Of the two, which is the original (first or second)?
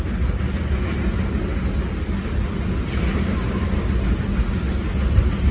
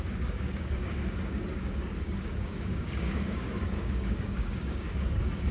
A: first